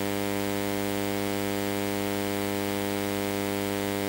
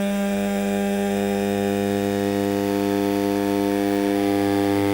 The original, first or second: first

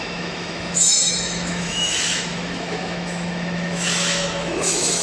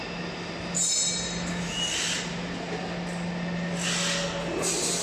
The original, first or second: second